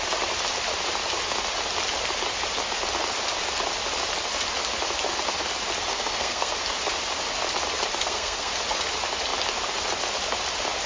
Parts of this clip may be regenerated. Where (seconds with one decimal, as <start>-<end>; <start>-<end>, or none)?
5.9-6.5; 8.0-8.5